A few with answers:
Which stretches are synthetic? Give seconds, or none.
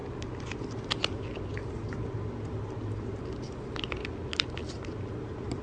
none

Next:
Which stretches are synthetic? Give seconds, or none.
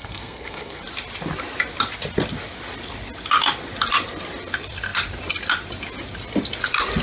0.0-0.8